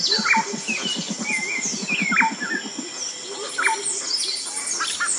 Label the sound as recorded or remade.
recorded